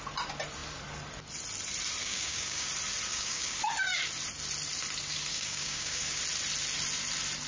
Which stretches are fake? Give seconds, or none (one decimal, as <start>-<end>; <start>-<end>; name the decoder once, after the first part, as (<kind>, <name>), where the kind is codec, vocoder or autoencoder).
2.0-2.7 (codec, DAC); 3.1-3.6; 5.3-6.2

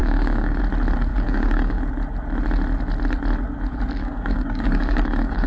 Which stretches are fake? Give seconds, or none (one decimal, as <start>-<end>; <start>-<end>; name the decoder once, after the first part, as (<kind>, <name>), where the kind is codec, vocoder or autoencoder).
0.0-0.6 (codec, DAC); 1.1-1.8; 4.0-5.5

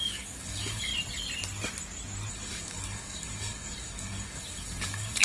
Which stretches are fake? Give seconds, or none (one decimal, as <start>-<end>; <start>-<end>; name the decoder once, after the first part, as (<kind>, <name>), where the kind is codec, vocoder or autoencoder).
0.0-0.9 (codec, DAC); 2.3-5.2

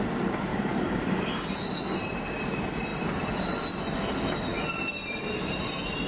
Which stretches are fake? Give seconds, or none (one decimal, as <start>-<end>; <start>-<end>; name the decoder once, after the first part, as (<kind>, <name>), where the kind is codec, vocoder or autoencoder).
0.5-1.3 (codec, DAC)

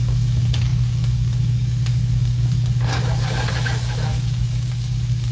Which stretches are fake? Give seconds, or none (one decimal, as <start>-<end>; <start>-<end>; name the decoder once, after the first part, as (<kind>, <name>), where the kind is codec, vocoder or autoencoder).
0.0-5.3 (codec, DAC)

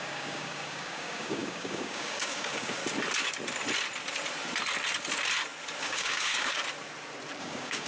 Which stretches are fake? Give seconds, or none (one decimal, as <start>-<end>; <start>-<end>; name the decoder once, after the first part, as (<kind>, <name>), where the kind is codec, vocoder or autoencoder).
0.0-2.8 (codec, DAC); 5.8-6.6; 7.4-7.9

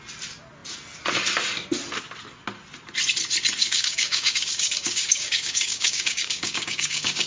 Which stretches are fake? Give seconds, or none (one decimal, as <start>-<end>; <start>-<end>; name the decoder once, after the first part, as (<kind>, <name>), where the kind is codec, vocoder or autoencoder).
3.6-7.3 (codec, DAC)

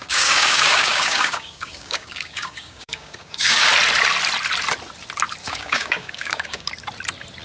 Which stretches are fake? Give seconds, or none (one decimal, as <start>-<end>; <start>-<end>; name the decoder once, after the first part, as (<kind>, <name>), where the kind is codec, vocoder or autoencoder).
0.0-3.7 (codec, DAC); 5.4-6.7